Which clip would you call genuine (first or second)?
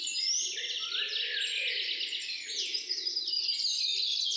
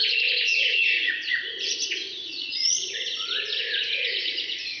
first